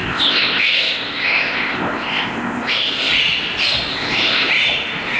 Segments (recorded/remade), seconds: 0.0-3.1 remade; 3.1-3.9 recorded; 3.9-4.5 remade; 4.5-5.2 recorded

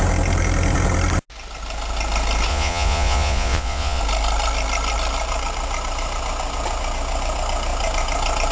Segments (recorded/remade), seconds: 0.0-2.5 recorded; 2.5-4.0 remade; 4.0-8.5 recorded